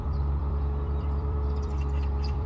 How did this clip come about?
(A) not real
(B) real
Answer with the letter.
A